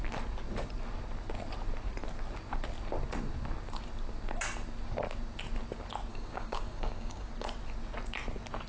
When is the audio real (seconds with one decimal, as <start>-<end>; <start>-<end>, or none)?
0.0-6.1; 7.3-8.7